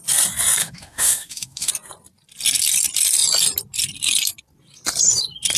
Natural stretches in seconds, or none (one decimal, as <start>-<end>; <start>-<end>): 0.0-0.6; 1.7-5.6